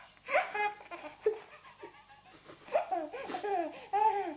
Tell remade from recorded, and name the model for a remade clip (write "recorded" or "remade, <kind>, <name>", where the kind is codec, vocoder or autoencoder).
recorded